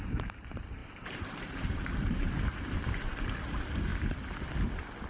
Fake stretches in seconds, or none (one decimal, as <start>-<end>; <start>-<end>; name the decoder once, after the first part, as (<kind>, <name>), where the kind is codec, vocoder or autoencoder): 0.0-3.9 (vocoder, BigVGAN v2)